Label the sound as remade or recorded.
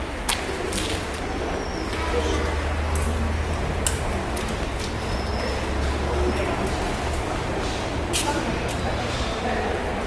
recorded